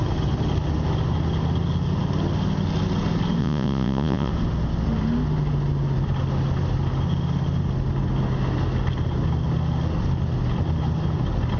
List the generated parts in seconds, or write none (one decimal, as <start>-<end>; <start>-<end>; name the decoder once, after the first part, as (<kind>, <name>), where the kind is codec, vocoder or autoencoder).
3.4-4.3 (vocoder, Vocos)